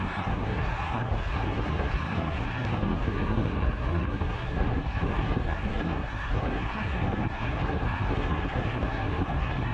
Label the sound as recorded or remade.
remade